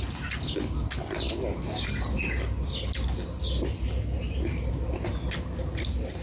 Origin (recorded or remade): recorded